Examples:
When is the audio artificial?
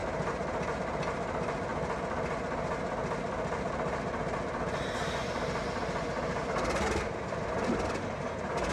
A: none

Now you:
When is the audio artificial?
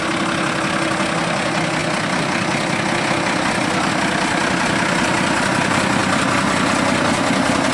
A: none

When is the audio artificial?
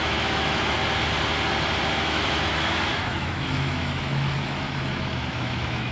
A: 0.0-0.8 (autoencoder, DAC-VAE); 1.9-5.9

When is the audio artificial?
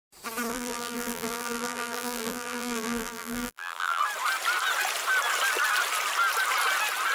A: 0.5-4.0 (vocoder, BigVGAN v2)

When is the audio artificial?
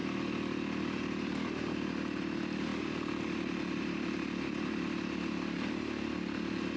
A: none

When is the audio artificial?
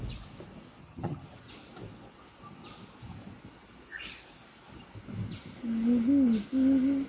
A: 0.8-1.5 (vocoder, HiFi-GAN)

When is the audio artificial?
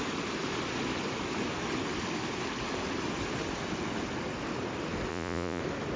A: 5.1-5.6 (vocoder, Vocos)